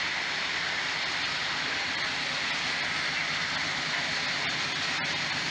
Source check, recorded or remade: recorded